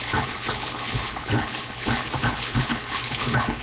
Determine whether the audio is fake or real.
fake